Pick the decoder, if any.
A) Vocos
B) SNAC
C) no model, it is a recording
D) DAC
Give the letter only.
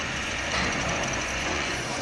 A